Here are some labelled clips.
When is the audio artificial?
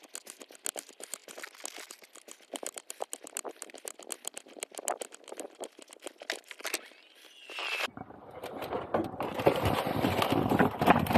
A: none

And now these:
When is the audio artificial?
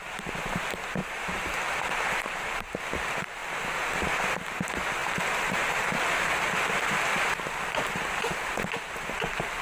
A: 1.0-2.8 (vocoder, BigVGAN v2)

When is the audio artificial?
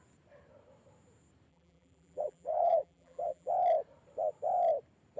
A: 1.5-3.5 (vocoder, BigVGAN v2)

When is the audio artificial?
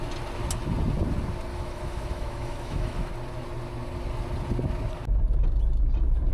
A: 1.5-3.1 (autoencoder, DAC-VAE)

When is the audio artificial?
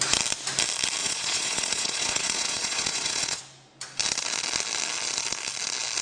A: 1.0-3.4 (vocoder, Vocos)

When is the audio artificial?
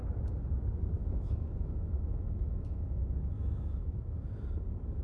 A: 1.0-4.0 (autoencoder, DAC-VAE)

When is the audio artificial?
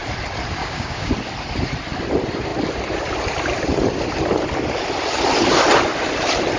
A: 0.6-1.1 (codec, DAC)